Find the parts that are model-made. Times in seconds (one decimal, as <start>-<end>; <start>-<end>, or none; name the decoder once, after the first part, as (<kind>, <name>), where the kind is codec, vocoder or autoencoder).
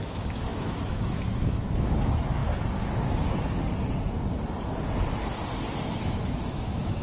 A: 0.0-2.4 (autoencoder, DAC-VAE); 6.0-7.0